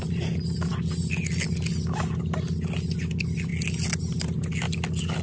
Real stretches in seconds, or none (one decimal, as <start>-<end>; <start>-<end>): 0.0-5.2